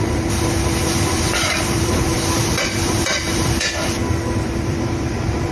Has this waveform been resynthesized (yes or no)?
yes